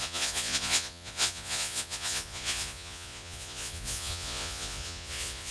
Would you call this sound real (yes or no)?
no